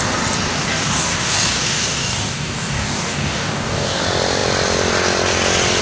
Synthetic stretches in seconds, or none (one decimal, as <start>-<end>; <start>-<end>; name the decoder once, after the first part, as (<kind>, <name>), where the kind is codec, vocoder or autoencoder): 0.5-4.0 (codec, DAC)